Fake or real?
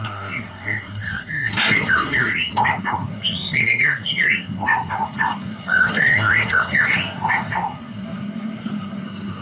fake